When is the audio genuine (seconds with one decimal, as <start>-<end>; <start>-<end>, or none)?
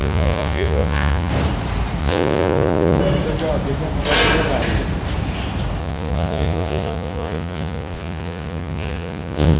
1.3-2.0; 3.0-5.8